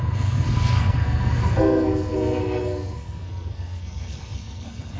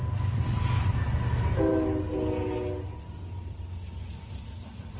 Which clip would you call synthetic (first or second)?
first